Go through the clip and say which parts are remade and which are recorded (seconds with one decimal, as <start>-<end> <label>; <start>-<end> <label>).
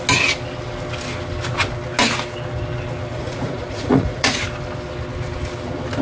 0.0-3.1 recorded; 3.1-4.4 remade; 4.4-6.0 recorded